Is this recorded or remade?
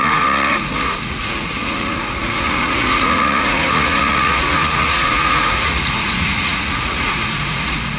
remade